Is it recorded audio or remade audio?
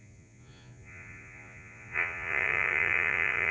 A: remade